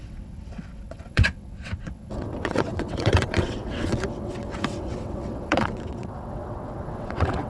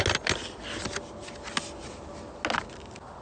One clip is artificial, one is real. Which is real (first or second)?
second